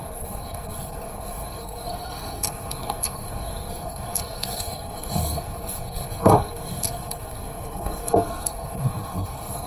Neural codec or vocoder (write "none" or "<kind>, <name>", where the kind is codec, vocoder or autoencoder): codec, SNAC